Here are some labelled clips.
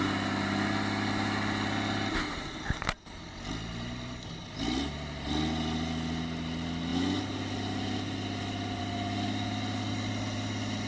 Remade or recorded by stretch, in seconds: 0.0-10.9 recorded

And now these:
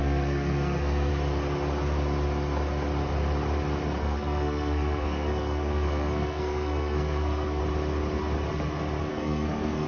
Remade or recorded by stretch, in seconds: 0.0-1.1 remade; 1.1-4.0 recorded; 4.0-7.6 remade; 7.6-9.1 recorded; 9.1-9.9 remade

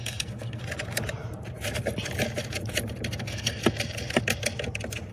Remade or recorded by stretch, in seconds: 0.0-0.6 remade; 0.6-3.2 recorded; 3.2-3.6 remade; 3.6-5.1 recorded

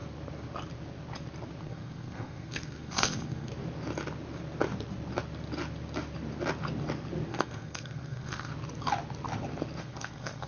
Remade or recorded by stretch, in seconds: 0.0-1.6 recorded; 1.6-3.5 remade; 3.5-7.3 recorded; 7.3-8.5 remade; 8.5-9.8 recorded; 9.8-10.5 remade

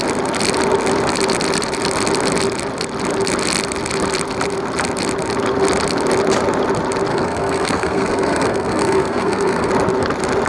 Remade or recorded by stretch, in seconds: 0.0-7.1 recorded; 7.1-9.7 remade; 9.7-10.5 recorded

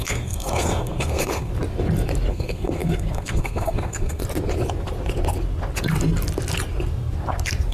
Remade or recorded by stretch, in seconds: 0.0-1.5 remade; 1.5-2.3 recorded; 2.3-4.2 remade; 4.2-7.7 recorded

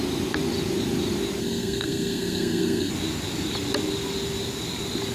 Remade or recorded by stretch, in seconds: 0.0-1.4 recorded; 1.4-2.9 remade; 2.9-5.1 recorded

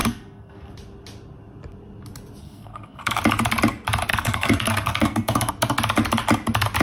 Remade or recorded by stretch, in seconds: 0.0-0.7 remade; 0.7-2.4 recorded; 2.4-3.2 remade; 3.2-4.1 recorded; 4.1-5.5 remade; 5.5-6.8 recorded